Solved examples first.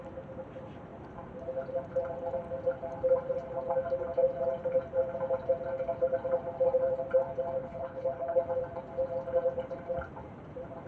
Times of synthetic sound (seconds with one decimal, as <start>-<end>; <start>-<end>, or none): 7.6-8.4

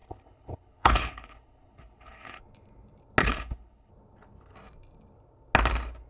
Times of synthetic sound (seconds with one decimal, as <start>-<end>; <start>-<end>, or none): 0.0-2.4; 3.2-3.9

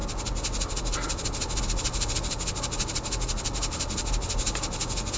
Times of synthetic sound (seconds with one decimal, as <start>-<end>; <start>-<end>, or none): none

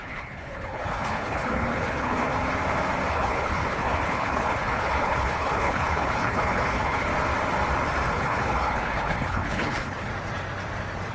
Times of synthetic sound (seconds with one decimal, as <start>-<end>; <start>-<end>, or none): 0.0-2.3; 3.1-7.1; 8.1-10.1

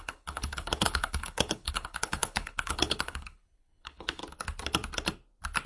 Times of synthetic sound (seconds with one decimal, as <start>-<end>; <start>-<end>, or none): 0.0-4.2

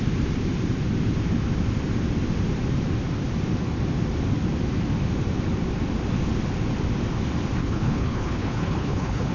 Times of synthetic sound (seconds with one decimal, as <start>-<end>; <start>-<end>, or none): 7.6-9.3

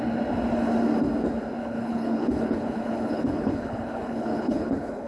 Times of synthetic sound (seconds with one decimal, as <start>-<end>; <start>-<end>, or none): 1.6-5.1